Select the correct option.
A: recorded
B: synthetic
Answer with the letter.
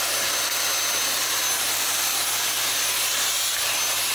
A